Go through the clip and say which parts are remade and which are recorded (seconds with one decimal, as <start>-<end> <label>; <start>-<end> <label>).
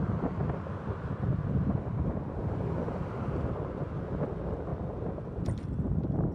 0.0-6.3 recorded